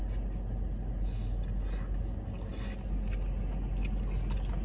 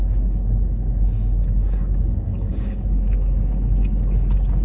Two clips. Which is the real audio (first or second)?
first